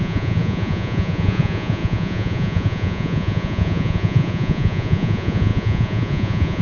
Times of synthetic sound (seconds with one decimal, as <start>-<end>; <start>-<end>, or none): 0.0-6.6